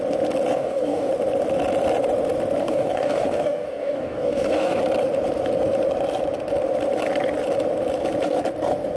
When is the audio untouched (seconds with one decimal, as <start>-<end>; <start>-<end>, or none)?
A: 0.0-0.5; 1.1-2.6; 4.8-9.0